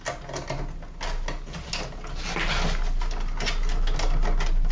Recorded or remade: recorded